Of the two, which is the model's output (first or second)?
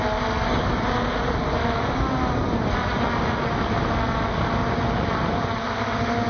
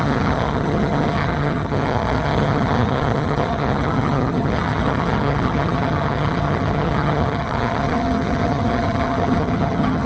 second